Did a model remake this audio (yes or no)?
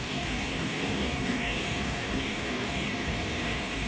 yes